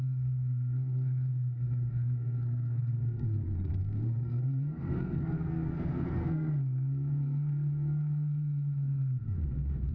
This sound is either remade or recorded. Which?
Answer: remade